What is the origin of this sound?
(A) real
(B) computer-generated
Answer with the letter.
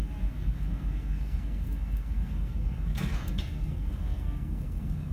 B